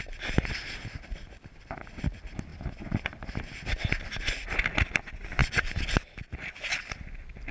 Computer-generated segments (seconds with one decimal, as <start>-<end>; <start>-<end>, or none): none